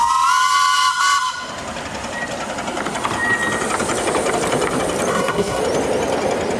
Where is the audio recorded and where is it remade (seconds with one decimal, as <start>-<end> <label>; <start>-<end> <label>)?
0.0-5.1 recorded; 5.1-5.6 remade; 5.6-6.6 recorded